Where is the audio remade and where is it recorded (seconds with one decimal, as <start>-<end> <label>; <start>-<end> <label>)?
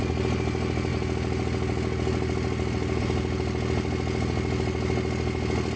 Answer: 0.0-5.8 recorded